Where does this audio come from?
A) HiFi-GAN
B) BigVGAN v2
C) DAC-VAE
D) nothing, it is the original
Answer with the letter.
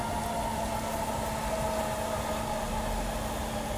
D